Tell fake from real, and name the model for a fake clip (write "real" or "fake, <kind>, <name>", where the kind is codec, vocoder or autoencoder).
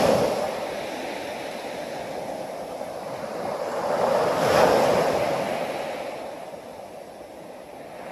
real